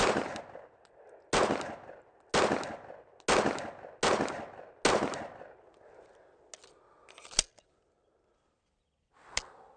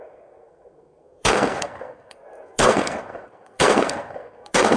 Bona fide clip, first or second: first